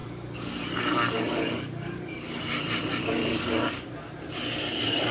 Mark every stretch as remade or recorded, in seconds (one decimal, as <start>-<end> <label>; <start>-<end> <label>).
0.0-2.4 remade; 2.4-3.0 recorded; 3.0-3.9 remade; 3.9-5.1 recorded